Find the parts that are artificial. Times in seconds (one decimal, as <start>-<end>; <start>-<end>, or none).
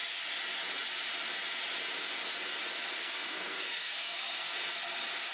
3.0-4.5